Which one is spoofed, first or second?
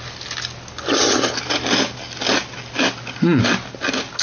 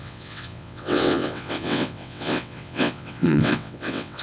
second